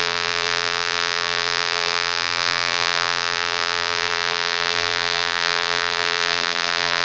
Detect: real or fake fake